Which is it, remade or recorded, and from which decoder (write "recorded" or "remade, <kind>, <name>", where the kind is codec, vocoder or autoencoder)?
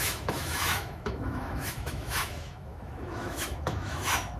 remade, autoencoder, DAC-VAE